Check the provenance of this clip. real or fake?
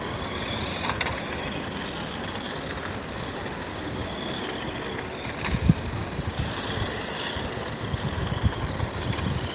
real